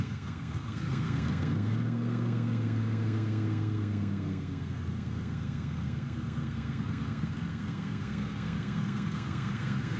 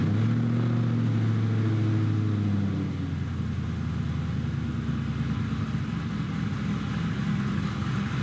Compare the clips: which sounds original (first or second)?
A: second